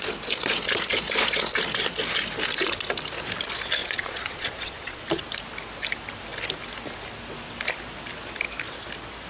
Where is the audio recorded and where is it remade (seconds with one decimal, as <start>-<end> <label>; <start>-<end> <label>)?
0.0-3.8 recorded; 3.8-5.2 remade; 5.2-9.3 recorded